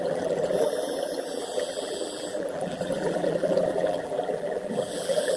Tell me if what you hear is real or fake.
fake